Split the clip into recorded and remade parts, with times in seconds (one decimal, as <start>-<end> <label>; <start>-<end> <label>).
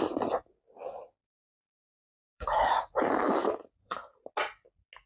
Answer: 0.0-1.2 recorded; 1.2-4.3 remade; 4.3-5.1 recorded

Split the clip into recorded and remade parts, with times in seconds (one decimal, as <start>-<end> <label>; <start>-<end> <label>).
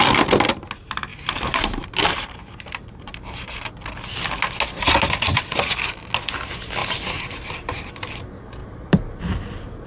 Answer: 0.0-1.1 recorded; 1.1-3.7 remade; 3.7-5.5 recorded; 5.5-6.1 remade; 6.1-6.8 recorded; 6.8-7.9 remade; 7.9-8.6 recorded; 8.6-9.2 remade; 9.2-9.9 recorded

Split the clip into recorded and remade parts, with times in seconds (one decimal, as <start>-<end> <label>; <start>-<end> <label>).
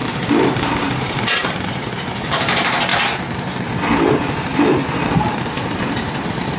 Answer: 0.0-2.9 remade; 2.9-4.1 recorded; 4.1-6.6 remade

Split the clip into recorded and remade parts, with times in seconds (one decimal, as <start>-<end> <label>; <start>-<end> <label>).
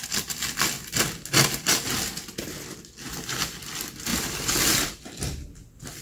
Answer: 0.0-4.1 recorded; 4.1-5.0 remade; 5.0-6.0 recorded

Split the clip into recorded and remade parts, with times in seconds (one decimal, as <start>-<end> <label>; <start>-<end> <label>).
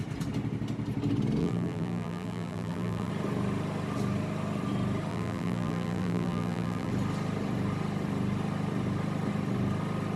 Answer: 0.0-1.4 recorded; 1.4-3.1 remade; 3.1-5.1 recorded; 5.1-6.9 remade; 6.9-10.2 recorded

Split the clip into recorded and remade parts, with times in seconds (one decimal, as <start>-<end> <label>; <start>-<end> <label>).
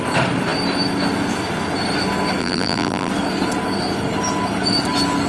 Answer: 0.0-2.4 recorded; 2.4-3.1 remade; 3.1-5.3 recorded